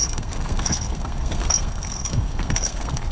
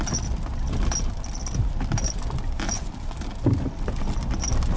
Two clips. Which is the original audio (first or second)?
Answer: second